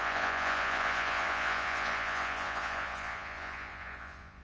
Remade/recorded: remade